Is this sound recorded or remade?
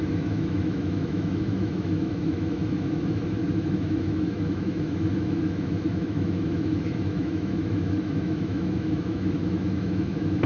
remade